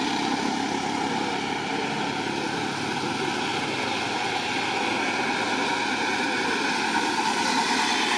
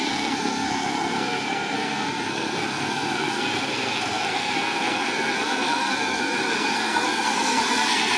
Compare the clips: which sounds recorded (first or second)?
first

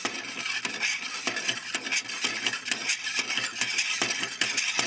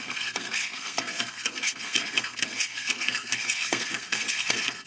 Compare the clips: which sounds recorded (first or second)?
first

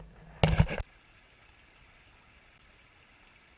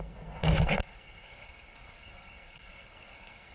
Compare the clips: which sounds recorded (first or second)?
first